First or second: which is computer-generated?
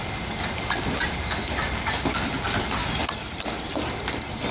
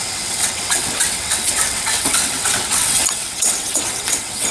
second